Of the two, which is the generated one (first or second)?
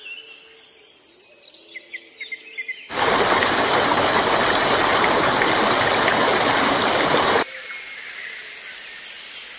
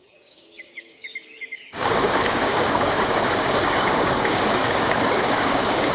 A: second